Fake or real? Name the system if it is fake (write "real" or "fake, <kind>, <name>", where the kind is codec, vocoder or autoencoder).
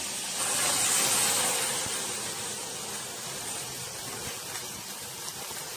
real